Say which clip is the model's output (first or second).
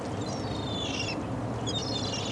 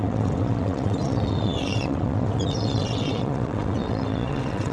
second